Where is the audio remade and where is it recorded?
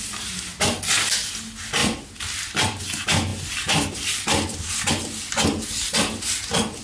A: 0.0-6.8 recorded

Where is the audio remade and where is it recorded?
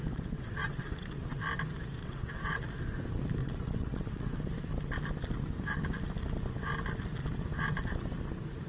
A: 0.0-1.4 remade; 1.4-2.0 recorded; 2.0-2.6 remade; 2.6-3.4 recorded; 3.4-4.4 remade; 4.4-8.7 recorded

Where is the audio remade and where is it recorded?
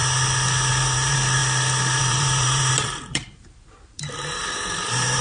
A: 0.0-0.7 recorded; 0.7-1.4 remade; 1.4-2.0 recorded; 2.0-5.2 remade